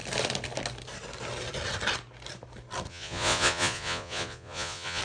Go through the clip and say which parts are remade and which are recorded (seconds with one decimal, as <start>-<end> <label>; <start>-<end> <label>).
0.0-2.9 recorded; 2.9-5.0 remade